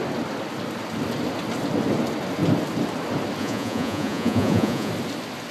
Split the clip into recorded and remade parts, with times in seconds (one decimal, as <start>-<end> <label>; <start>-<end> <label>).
0.0-3.4 recorded; 3.4-4.9 remade; 4.9-5.5 recorded